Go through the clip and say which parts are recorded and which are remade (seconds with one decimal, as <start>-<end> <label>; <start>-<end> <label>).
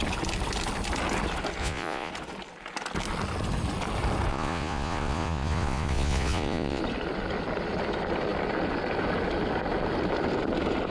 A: 0.0-1.6 recorded; 1.6-2.1 remade; 2.1-4.3 recorded; 4.3-6.8 remade; 6.8-10.9 recorded